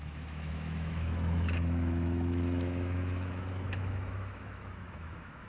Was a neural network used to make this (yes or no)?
yes